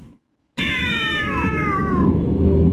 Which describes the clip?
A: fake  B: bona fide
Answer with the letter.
A